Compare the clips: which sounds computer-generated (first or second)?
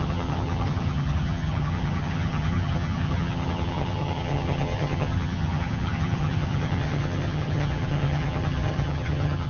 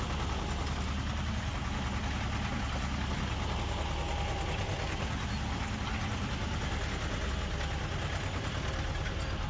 first